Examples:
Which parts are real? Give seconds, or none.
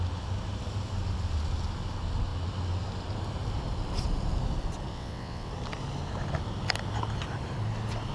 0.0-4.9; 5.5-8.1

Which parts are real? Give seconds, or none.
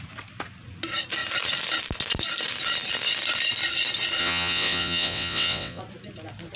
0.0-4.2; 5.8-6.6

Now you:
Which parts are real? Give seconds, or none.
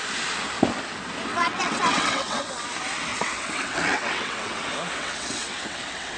0.0-1.3; 2.4-3.1; 4.6-5.0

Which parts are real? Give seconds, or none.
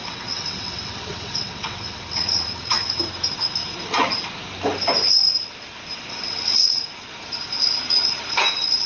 3.0-6.1; 6.8-8.9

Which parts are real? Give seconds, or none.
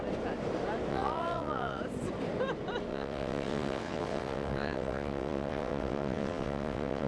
0.0-0.9; 1.8-2.9